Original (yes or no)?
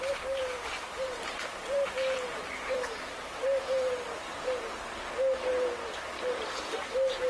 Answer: no